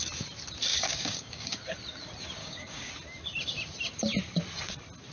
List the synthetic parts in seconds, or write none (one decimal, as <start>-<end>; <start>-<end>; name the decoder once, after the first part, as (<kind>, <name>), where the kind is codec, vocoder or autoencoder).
0.7-1.6 (codec, DAC); 2.4-2.9

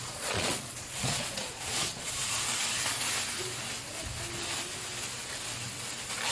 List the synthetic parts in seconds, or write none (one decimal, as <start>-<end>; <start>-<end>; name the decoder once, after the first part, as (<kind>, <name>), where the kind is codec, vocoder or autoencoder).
0.0-2.2 (vocoder, Vocos)